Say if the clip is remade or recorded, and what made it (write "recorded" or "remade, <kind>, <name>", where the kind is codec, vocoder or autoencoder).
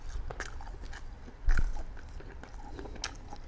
recorded